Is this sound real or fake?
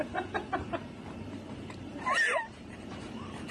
fake